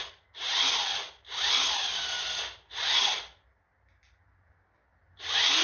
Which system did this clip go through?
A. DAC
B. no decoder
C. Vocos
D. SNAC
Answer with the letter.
B